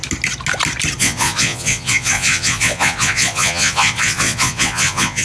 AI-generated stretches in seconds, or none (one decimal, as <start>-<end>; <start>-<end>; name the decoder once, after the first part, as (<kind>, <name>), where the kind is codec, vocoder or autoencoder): 1.0-5.2 (vocoder, Vocos)